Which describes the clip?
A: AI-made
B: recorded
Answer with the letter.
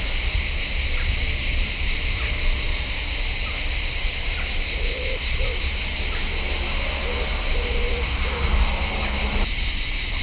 B